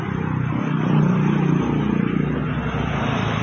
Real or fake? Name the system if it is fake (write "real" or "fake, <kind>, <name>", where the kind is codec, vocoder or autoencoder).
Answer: real